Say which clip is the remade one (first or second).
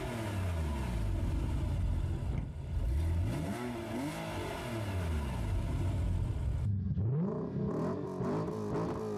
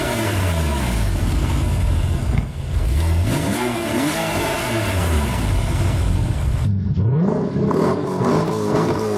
second